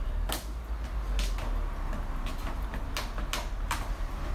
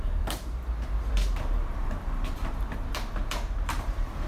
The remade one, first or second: second